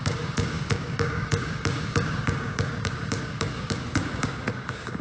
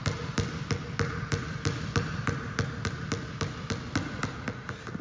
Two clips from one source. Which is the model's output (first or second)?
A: first